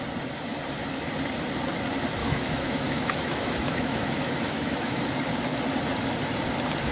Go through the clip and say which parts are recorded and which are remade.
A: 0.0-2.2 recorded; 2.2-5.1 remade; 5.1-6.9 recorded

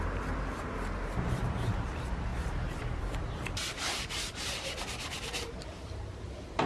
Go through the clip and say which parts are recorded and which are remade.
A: 0.0-6.7 remade

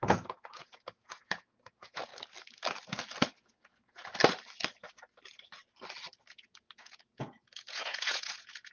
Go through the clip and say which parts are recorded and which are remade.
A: 0.0-2.1 remade; 2.1-3.4 recorded; 3.4-4.1 remade; 4.1-6.3 recorded; 6.3-8.7 remade

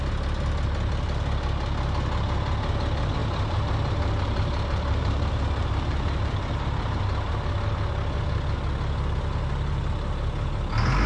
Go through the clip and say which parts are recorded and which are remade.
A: 0.0-3.2 recorded; 3.2-7.0 remade; 7.0-11.1 recorded

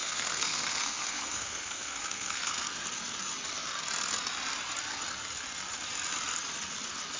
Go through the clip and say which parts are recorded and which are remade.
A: 0.0-2.7 remade; 2.7-7.2 recorded

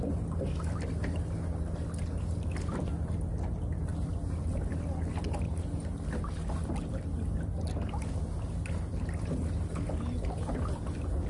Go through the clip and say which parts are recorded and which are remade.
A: 0.0-11.3 recorded

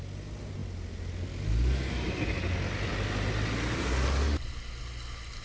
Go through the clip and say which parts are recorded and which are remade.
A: 0.0-5.4 recorded

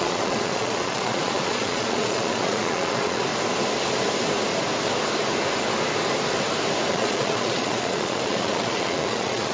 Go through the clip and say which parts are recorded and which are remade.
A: 0.0-3.3 remade; 3.3-6.9 recorded; 6.9-9.5 remade